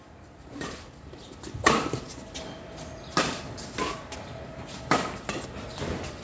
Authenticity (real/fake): real